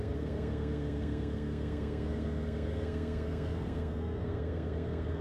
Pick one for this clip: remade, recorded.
remade